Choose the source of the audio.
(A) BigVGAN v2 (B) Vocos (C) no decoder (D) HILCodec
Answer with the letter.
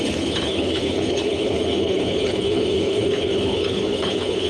D